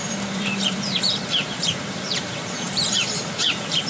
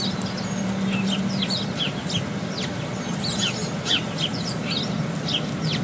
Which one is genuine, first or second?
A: second